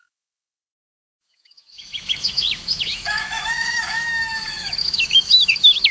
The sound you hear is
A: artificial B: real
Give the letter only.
A